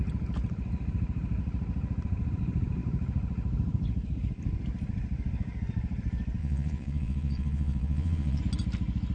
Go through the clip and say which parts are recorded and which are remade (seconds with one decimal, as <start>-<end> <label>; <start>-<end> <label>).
0.0-6.4 recorded; 6.4-8.4 remade; 8.4-9.1 recorded